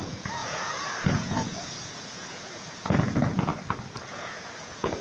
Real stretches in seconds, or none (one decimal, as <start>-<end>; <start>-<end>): 3.5-4.1